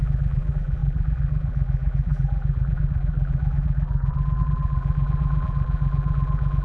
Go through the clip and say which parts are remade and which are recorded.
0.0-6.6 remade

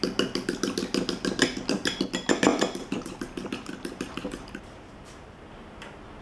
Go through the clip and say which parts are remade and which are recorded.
0.0-2.5 recorded; 2.5-5.5 remade; 5.5-6.2 recorded

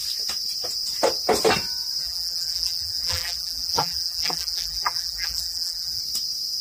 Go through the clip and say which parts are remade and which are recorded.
0.0-2.0 recorded; 2.0-6.0 remade; 6.0-6.6 recorded

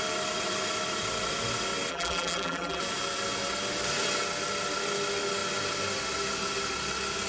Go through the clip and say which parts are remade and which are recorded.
0.0-1.9 recorded; 1.9-2.8 remade; 2.8-7.3 recorded

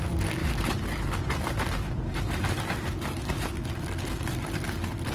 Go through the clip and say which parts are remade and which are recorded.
0.0-0.4 recorded; 0.4-3.5 remade; 3.5-5.1 recorded

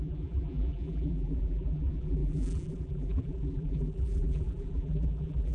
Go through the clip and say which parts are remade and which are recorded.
0.0-5.5 remade